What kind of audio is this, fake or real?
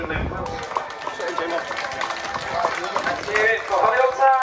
real